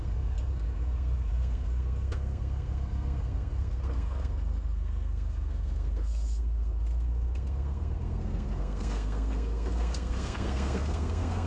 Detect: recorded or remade remade